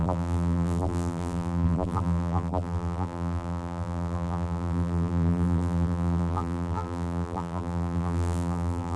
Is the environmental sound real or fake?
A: fake